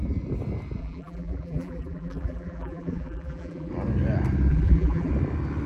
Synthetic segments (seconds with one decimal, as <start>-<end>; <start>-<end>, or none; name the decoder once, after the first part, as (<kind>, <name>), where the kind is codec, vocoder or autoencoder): 0.8-3.7 (vocoder, BigVGAN v2); 4.5-5.1

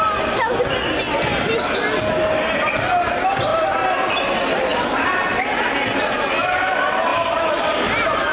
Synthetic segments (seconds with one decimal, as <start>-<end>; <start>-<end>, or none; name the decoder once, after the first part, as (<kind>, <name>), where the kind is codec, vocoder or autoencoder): 3.5-4.2 (vocoder, BigVGAN v2); 4.7-5.3; 7.1-7.7

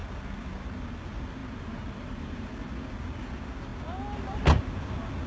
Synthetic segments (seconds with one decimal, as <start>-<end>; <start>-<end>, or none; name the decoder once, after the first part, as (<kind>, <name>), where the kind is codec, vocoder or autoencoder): 1.4-2.5 (vocoder, BigVGAN v2)

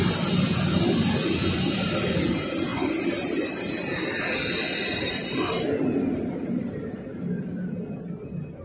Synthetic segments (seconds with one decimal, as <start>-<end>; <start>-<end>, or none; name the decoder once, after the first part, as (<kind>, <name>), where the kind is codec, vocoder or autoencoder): 1.4-2.0 (vocoder, BigVGAN v2); 2.7-5.6

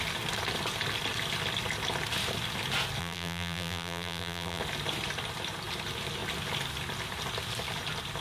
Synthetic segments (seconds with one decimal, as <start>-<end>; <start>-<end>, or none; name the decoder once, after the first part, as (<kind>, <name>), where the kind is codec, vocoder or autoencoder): 3.0-4.6 (vocoder, BigVGAN v2)

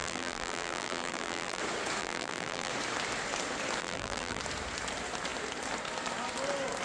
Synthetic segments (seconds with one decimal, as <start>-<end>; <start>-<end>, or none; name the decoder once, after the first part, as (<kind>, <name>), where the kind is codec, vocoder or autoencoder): 0.0-1.6 (vocoder, BigVGAN v2); 2.0-2.7; 3.8-4.4